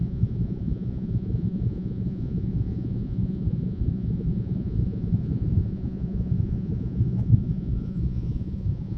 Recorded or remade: remade